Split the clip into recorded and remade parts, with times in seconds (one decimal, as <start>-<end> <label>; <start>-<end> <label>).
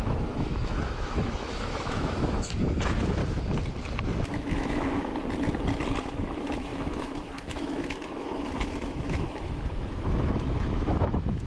0.0-3.2 remade; 3.2-4.2 recorded; 4.2-5.1 remade; 5.1-6.0 recorded; 6.0-11.5 remade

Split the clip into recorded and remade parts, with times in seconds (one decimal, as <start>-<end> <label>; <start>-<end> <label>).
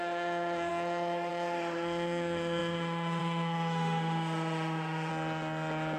0.0-5.1 remade; 5.1-6.0 recorded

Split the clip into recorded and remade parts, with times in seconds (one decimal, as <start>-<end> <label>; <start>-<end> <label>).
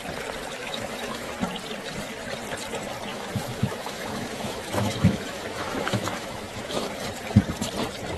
0.0-0.6 recorded; 0.6-1.3 remade; 1.3-3.1 recorded; 3.1-7.1 remade; 7.1-8.2 recorded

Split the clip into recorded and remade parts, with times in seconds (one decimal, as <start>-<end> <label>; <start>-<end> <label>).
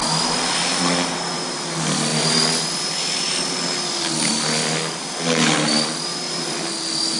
0.0-7.2 recorded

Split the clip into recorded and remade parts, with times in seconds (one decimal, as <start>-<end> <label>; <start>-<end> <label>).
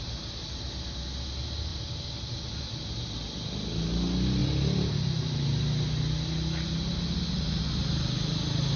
0.0-8.8 recorded